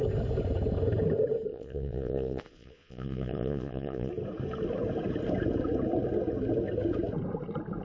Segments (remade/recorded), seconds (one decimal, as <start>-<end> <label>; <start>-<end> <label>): 0.0-1.5 recorded; 1.5-4.1 remade; 4.1-7.8 recorded